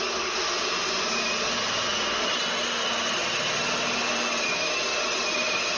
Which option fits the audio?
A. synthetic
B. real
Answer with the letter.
B